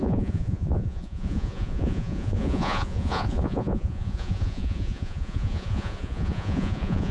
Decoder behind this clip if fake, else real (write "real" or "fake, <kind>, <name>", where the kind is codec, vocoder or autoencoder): fake, vocoder, Vocos